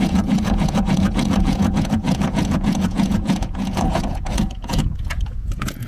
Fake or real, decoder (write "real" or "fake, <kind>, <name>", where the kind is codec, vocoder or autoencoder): fake, vocoder, Vocos